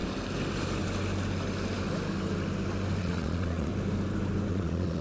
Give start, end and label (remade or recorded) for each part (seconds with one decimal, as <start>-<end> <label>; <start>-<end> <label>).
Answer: 0.0-3.0 recorded; 3.0-3.7 remade; 3.7-4.5 recorded; 4.5-5.0 remade